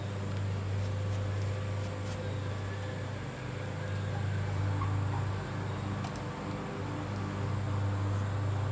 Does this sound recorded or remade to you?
recorded